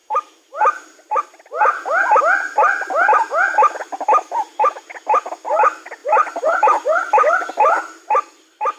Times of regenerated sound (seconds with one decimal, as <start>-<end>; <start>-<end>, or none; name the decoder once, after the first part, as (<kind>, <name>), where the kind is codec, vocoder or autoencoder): 0.0-2.2 (vocoder, BigVGAN v2); 6.0-7.5